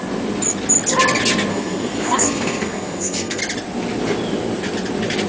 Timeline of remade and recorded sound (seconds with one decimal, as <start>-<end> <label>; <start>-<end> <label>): 0.0-1.5 recorded; 1.5-3.4 remade; 3.4-5.3 recorded